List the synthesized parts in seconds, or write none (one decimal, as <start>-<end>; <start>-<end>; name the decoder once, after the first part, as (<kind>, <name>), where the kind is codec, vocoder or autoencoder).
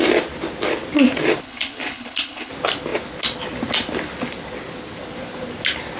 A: 1.4-2.5 (codec, HILCodec)